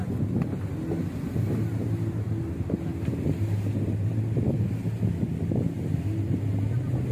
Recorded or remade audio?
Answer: recorded